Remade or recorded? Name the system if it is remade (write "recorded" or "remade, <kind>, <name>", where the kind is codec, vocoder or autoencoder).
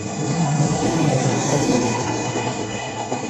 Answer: remade, codec, SNAC